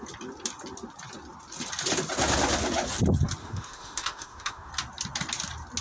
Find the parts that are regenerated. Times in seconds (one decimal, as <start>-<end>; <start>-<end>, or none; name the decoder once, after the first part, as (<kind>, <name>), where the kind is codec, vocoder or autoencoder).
3.4-4.7 (autoencoder, DAC-VAE)